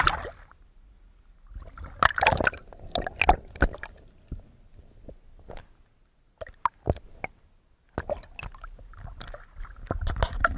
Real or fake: real